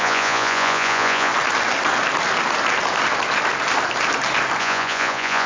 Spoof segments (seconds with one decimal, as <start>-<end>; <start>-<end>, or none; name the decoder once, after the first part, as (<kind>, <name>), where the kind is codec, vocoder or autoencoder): 0.0-1.3 (vocoder, Vocos); 4.6-5.5